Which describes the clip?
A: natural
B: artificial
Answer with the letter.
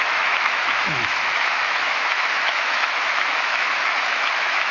B